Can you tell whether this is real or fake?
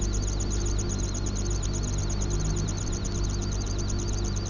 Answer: real